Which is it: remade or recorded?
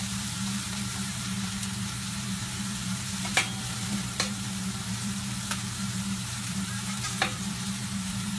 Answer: remade